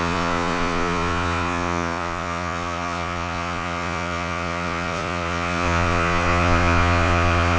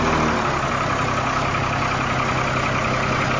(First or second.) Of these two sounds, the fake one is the first